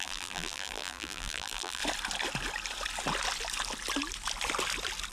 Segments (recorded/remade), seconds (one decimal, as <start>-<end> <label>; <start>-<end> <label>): 0.0-1.8 remade; 1.8-5.1 recorded